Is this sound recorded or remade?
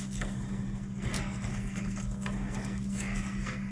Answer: remade